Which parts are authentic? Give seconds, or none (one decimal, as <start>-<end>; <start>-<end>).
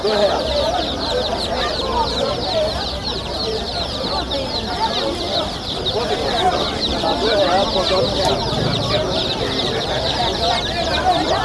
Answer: 7.4-8.2